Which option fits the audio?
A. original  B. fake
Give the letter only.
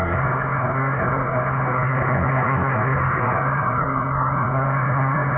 B